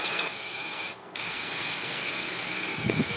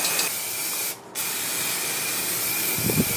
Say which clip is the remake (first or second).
first